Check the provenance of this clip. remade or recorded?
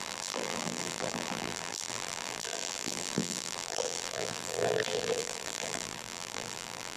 remade